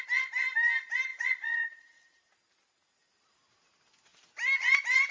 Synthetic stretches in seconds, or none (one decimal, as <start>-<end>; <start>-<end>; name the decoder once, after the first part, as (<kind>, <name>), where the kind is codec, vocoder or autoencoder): 1.1-2.2 (vocoder, Vocos)